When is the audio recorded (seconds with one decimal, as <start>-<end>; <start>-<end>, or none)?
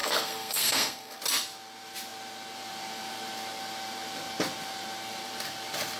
1.2-6.0